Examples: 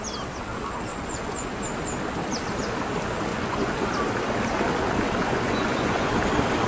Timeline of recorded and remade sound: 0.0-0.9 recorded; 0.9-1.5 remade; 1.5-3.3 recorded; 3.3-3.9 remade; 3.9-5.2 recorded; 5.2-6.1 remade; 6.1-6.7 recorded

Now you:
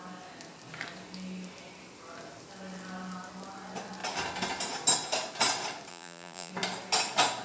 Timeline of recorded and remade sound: 0.0-5.9 recorded; 5.9-6.5 remade; 6.5-7.4 recorded

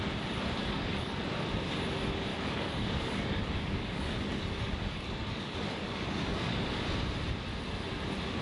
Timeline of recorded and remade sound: 0.0-0.6 recorded; 0.6-1.2 remade; 1.2-2.3 recorded; 2.3-6.8 remade; 6.8-8.4 recorded

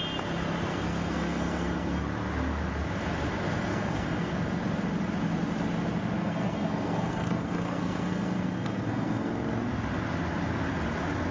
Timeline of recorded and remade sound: 0.0-0.7 recorded; 0.7-2.0 remade; 2.0-3.7 recorded; 3.7-4.3 remade; 4.3-6.2 recorded; 6.2-9.3 remade; 9.3-11.3 recorded

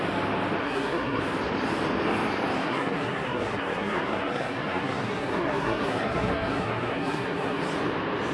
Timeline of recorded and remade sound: 0.0-0.6 recorded; 0.6-1.2 remade; 1.2-2.6 recorded; 2.6-7.6 remade; 7.6-8.3 recorded

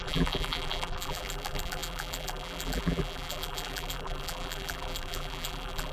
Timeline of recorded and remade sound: 0.0-5.9 remade